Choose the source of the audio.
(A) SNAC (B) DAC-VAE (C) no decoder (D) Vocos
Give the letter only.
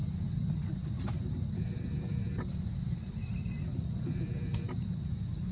C